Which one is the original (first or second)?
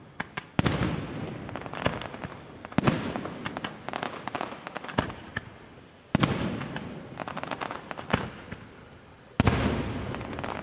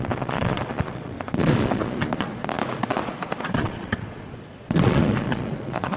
first